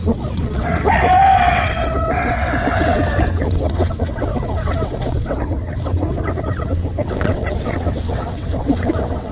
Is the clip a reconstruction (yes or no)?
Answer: yes